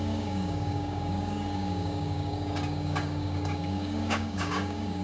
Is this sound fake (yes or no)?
yes